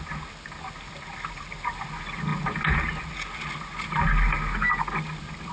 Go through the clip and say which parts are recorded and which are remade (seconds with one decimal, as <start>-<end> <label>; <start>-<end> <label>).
0.0-5.5 recorded